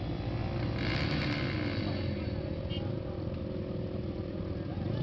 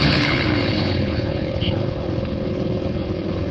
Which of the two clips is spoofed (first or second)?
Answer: second